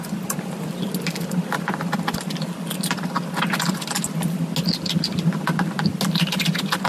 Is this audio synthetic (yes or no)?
no